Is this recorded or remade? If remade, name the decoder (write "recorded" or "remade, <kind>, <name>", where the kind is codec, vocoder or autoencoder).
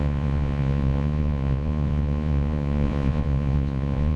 remade, vocoder, Vocos